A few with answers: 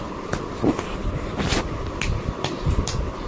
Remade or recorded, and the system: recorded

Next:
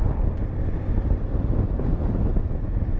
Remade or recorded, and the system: recorded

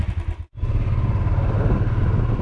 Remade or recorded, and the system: recorded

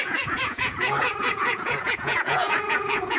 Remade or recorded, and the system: remade, vocoder, Vocos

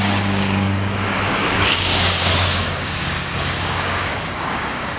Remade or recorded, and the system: remade, codec, DAC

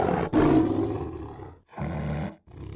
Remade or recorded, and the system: recorded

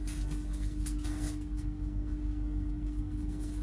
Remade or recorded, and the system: remade, codec, SNAC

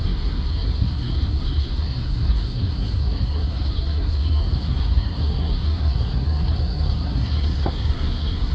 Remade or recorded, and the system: remade, codec, SNAC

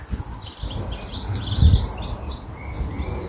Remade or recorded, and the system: recorded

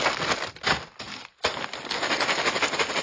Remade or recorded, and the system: recorded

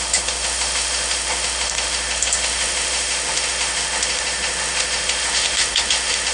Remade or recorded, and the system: remade, autoencoder, DAC-VAE